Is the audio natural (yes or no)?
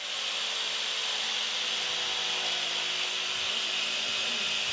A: yes